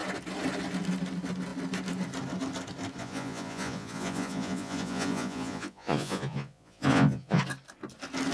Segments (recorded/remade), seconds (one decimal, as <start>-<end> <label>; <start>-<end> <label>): 0.0-3.0 recorded; 3.0-7.4 remade; 7.4-8.3 recorded